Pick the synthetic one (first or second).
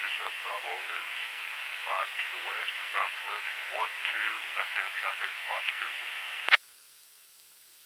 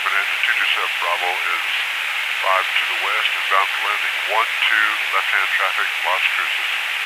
first